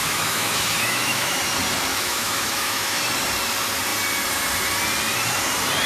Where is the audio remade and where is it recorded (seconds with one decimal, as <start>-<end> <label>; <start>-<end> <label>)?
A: 0.0-1.4 remade; 1.4-1.9 recorded; 1.9-3.0 remade; 3.0-5.9 recorded